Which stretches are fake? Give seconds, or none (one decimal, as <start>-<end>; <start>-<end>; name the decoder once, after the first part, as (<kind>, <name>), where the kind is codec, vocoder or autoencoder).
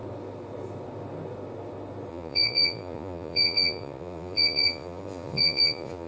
2.1-6.1 (vocoder, Vocos)